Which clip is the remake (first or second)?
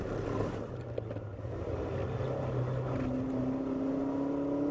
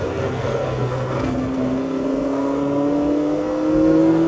second